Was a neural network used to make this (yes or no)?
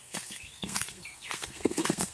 yes